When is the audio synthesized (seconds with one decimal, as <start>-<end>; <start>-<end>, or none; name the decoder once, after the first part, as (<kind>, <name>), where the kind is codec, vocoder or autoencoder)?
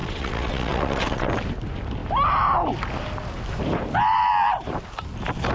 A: 0.0-1.3 (vocoder, WaveNeXt)